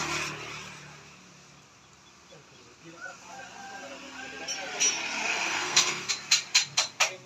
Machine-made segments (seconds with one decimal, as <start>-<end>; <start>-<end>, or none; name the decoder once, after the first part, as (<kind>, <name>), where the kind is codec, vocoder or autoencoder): 5.3-6.1 (codec, SNAC)